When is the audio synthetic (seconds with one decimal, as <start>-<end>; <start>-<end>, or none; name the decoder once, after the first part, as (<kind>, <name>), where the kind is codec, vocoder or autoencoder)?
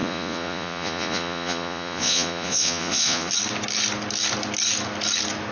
0.0-3.3 (vocoder, Vocos)